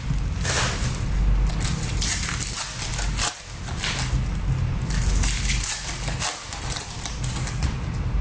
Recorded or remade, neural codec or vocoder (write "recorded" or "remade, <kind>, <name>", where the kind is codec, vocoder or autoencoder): recorded